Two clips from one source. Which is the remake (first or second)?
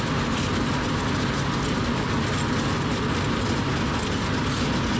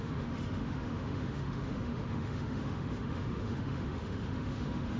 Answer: second